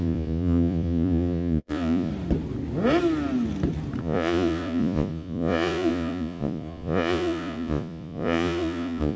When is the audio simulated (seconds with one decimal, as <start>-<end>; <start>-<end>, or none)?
0.0-2.1; 4.0-9.2